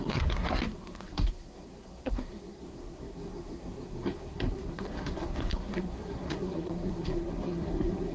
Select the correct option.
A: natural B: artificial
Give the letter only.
B